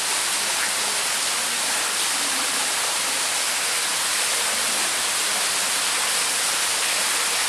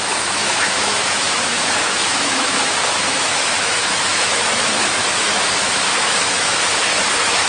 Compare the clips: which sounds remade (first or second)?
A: second